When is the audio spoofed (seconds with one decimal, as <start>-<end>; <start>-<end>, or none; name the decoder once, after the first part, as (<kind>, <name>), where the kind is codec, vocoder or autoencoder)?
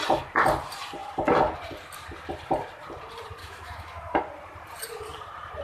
3.4-4.2 (autoencoder, DAC-VAE)